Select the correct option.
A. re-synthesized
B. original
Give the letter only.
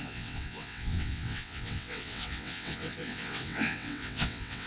A